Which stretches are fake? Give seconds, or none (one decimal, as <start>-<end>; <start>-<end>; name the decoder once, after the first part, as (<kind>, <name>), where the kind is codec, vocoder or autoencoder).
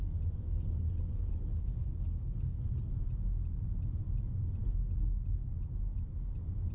0.5-2.9 (codec, HILCodec)